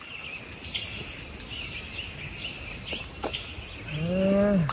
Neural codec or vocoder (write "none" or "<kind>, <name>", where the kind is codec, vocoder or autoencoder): none